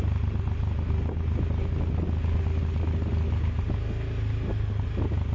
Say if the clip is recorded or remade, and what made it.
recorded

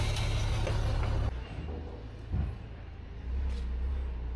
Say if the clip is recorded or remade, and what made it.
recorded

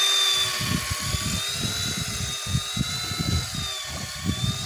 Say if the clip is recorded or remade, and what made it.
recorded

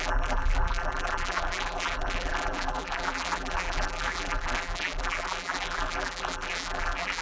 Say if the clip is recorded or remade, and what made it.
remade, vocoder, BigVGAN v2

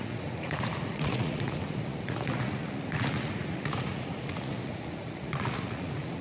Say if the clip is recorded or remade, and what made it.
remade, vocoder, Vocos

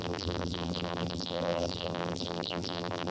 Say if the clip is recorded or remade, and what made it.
remade, vocoder, BigVGAN v2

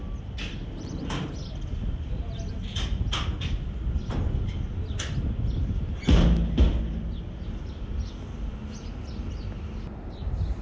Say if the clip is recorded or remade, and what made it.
recorded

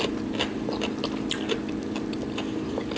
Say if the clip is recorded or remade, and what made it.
recorded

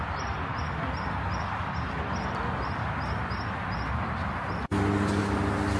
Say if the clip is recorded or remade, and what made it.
recorded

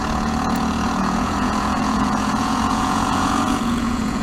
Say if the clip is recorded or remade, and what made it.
remade, vocoder, Vocos